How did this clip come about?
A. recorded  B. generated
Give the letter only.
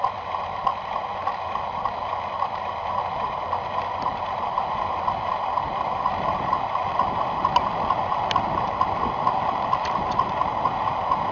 A